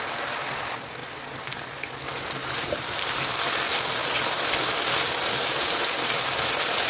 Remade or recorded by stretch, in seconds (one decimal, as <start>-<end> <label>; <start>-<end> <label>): 0.0-2.4 recorded; 2.4-3.0 remade; 3.0-6.9 recorded